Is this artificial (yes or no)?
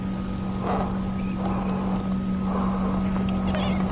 no